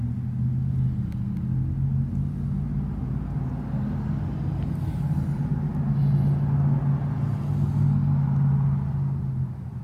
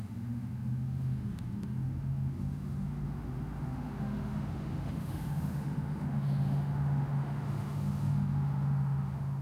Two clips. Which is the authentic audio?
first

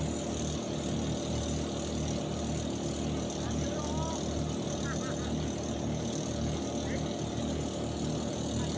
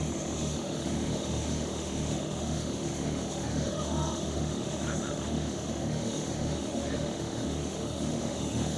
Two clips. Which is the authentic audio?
first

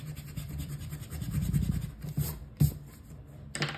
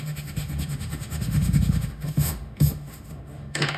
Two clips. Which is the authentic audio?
first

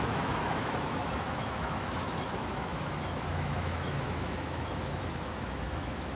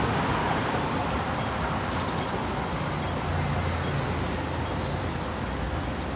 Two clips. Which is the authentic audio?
second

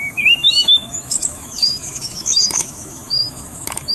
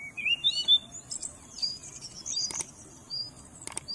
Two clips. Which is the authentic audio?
second